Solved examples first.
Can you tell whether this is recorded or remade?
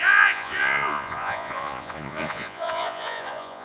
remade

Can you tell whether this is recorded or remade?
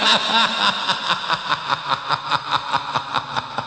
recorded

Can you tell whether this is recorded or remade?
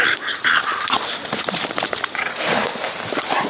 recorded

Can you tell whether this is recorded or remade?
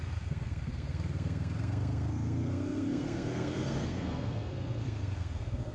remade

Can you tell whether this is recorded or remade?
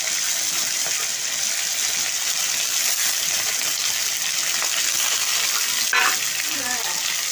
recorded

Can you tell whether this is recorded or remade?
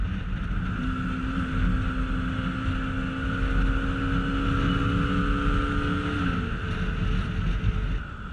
recorded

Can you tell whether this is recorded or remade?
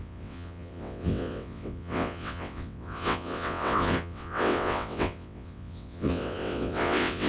remade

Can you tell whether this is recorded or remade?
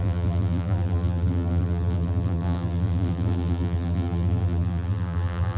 remade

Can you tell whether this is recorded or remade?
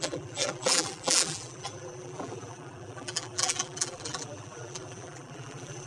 remade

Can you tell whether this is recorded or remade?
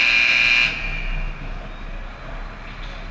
recorded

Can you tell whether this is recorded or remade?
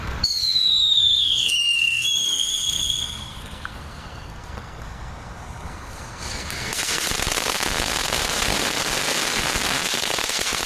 remade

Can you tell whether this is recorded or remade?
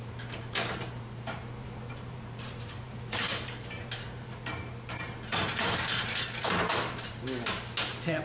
remade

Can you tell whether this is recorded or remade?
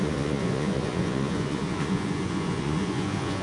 remade